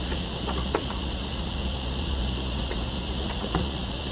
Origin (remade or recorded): remade